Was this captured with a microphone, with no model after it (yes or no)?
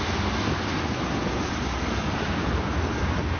yes